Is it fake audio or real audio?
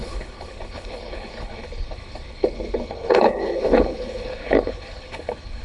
fake